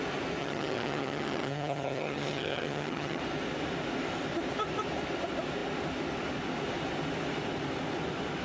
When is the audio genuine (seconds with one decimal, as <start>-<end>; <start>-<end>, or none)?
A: 0.0-0.4; 3.2-8.4